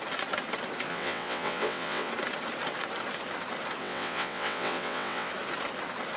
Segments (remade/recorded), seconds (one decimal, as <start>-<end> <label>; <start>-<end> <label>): 0.0-0.9 recorded; 0.9-2.1 remade; 2.1-3.8 recorded; 3.8-5.3 remade; 5.3-6.2 recorded